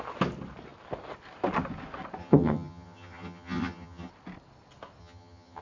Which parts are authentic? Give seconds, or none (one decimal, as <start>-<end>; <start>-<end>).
0.0-2.2; 4.1-5.0